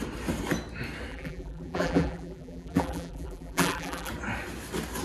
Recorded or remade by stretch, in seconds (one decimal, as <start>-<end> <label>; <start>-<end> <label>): 0.0-1.1 recorded; 1.1-4.1 remade; 4.1-5.0 recorded